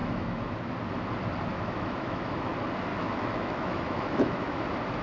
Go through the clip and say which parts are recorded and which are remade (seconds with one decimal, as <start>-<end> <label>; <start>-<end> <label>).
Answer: 0.0-0.7 remade; 0.7-1.5 recorded; 1.5-2.5 remade; 2.5-2.9 recorded; 2.9-4.6 remade; 4.6-5.0 recorded